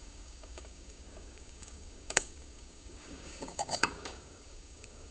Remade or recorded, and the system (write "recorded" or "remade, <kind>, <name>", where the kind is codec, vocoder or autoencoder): remade, codec, DAC